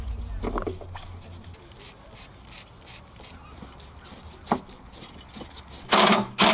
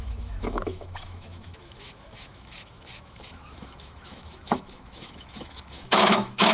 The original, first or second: first